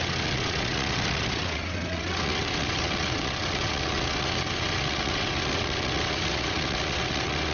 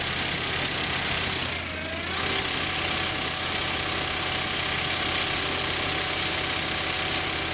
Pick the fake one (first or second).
first